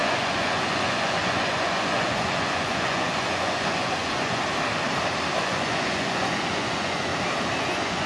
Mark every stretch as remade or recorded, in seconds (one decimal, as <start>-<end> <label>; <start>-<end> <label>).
0.0-4.4 remade; 4.4-5.4 recorded; 5.4-7.1 remade; 7.1-7.6 recorded; 7.6-8.1 remade